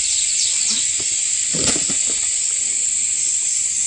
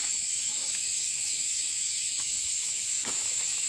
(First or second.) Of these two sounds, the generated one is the second